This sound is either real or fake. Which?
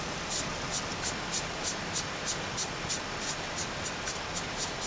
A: real